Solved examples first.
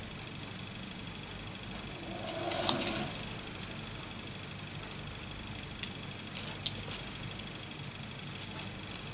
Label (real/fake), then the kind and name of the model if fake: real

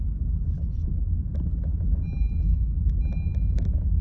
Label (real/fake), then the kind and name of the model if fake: real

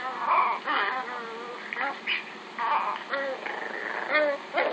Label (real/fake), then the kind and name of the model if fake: real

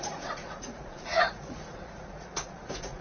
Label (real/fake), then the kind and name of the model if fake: fake, vocoder, Vocos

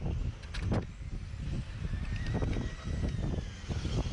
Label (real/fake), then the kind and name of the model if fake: real